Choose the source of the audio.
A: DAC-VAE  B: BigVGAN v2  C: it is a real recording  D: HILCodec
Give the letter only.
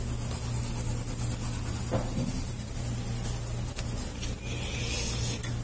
C